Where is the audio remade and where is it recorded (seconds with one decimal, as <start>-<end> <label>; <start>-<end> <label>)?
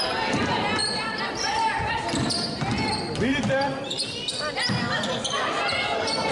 0.0-0.8 recorded; 0.8-1.9 remade; 1.9-3.7 recorded; 3.7-4.3 remade; 4.3-6.3 recorded